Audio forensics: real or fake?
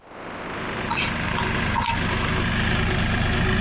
real